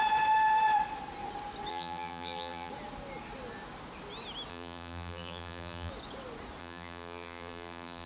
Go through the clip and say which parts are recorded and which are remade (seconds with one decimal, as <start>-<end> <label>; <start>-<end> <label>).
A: 0.0-1.7 recorded; 1.7-2.7 remade; 2.7-4.5 recorded; 4.5-5.9 remade; 5.9-6.6 recorded; 6.6-8.1 remade